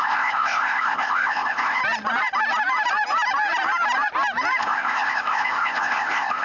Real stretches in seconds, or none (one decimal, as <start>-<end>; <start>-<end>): 1.8-4.6